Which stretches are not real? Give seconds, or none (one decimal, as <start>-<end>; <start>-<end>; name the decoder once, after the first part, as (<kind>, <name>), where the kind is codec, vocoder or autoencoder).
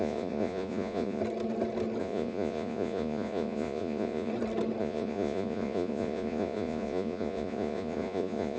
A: 0.0-1.2 (vocoder, Vocos); 2.0-4.3; 4.8-8.6